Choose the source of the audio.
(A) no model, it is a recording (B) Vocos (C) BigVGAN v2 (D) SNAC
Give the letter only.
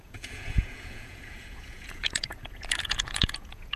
B